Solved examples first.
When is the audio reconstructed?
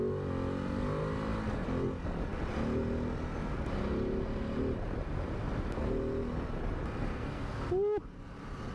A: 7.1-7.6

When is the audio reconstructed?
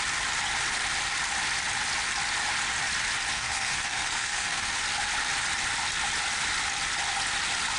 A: 3.3-4.7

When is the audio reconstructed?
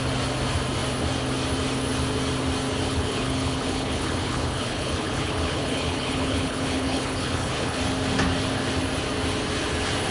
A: 2.9-7.8